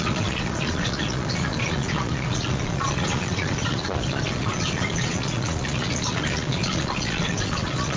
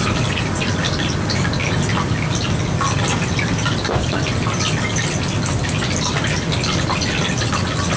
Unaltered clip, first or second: second